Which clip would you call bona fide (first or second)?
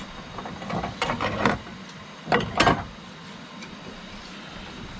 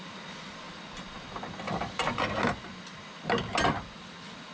second